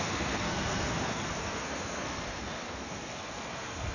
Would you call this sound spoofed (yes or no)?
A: yes